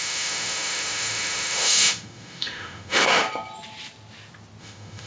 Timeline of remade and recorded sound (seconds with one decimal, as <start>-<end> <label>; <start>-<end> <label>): 0.0-3.2 remade; 3.2-4.6 recorded; 4.6-5.1 remade